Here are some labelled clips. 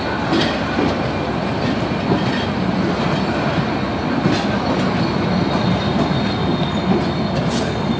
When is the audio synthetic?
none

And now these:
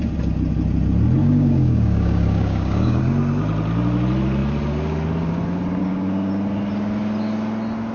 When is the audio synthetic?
1.2-3.0 (codec, DAC); 5.8-6.3